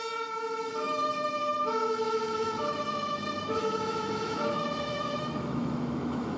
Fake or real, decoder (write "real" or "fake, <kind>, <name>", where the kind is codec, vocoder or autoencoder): fake, autoencoder, DAC-VAE